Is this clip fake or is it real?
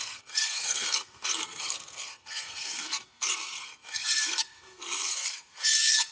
fake